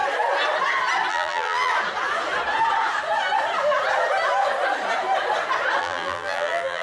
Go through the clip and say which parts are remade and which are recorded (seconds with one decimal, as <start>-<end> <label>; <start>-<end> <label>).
0.0-1.1 recorded; 1.1-1.7 remade; 1.7-5.8 recorded; 5.8-6.8 remade